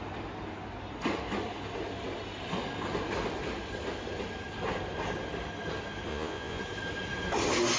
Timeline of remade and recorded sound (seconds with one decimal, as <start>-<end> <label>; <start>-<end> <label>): 0.0-6.1 recorded; 6.1-6.6 remade; 6.6-7.8 recorded